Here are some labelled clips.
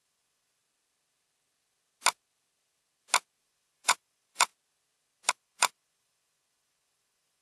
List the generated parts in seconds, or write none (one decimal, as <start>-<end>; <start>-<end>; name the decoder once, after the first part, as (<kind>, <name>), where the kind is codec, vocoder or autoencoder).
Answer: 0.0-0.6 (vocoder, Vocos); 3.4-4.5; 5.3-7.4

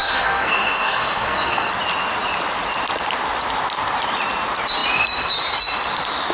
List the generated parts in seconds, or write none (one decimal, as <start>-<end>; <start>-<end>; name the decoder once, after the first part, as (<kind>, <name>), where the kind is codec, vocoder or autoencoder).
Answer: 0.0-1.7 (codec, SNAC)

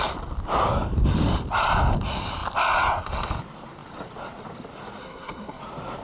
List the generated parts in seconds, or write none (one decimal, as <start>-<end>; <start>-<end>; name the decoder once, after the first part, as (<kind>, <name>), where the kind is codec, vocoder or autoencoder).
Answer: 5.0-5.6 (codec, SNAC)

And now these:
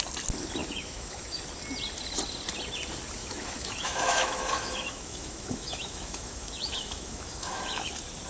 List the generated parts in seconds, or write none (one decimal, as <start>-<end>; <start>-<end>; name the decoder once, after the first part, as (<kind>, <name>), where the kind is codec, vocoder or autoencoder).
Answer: 0.6-1.4 (autoencoder, DAC-VAE); 3.2-7.9

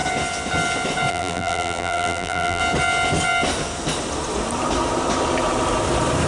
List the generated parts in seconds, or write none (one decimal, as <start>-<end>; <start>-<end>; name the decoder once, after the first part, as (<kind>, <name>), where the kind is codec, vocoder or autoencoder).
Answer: 1.1-2.6 (vocoder, BigVGAN v2)